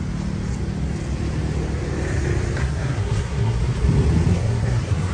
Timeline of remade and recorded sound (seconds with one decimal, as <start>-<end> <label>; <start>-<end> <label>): 0.0-2.6 recorded; 2.6-3.6 remade; 3.6-4.3 recorded; 4.3-5.1 remade